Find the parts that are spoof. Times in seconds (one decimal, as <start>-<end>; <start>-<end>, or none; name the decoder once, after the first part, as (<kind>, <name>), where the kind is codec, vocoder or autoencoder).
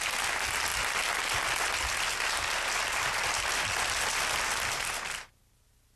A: none